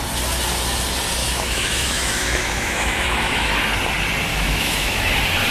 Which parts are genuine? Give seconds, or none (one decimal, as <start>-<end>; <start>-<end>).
0.0-1.2; 3.5-4.3; 5.1-5.5